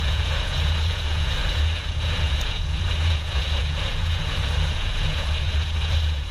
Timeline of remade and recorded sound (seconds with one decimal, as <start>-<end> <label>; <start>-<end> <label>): 0.0-6.3 remade